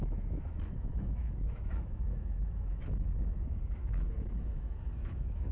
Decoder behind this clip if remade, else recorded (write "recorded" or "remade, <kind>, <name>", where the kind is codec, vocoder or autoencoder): remade, autoencoder, DAC-VAE